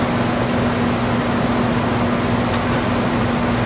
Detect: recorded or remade recorded